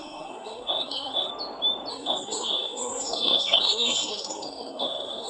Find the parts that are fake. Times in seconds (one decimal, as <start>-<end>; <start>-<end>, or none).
0.0-1.3; 1.9-5.3